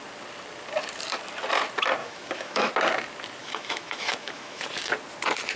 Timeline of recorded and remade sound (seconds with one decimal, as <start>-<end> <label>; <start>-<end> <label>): 0.0-2.0 recorded; 2.0-2.7 remade; 2.7-3.4 recorded; 3.4-4.6 remade; 4.6-5.6 recorded